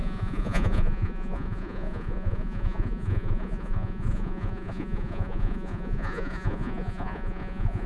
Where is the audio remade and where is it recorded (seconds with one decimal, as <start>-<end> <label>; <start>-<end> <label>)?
0.0-7.9 remade